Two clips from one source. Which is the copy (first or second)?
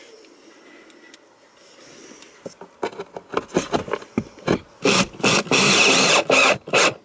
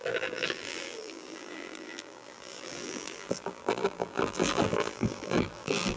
second